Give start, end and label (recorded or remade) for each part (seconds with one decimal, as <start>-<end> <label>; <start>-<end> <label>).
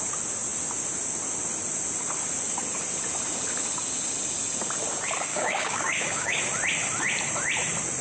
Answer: 0.0-5.3 recorded; 5.3-6.4 remade; 6.4-8.0 recorded